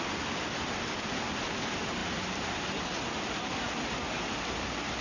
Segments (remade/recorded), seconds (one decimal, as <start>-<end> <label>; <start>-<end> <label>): 0.0-5.0 recorded